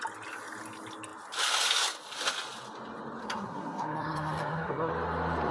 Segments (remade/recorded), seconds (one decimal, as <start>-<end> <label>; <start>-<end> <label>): 0.0-3.2 recorded; 3.2-4.9 remade; 4.9-5.5 recorded